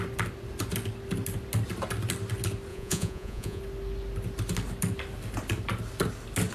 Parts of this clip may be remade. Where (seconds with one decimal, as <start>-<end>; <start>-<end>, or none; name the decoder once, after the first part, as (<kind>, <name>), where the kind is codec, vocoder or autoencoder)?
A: 2.7-3.6 (vocoder, Vocos)